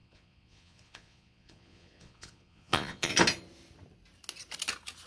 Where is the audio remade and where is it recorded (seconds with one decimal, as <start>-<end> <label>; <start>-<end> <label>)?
0.0-3.1 remade; 3.1-5.1 recorded